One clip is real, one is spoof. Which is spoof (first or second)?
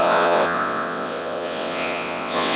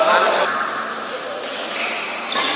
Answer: first